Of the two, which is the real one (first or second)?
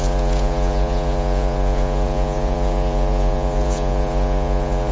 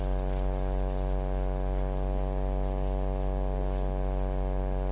second